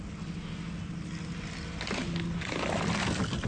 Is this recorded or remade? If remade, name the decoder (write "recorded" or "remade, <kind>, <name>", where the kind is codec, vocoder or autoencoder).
recorded